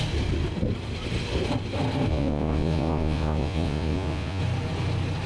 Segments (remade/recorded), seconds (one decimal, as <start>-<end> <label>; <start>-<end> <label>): 0.0-2.1 recorded; 2.1-4.4 remade; 4.4-5.3 recorded